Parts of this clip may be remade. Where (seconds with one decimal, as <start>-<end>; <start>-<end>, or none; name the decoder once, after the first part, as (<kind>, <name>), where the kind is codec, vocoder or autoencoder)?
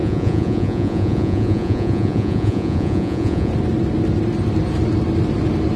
0.0-3.5 (vocoder, Vocos)